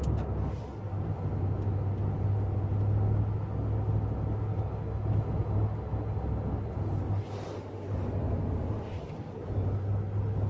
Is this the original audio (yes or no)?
yes